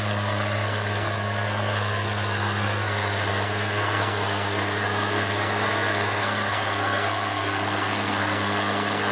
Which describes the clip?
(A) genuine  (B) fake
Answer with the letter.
B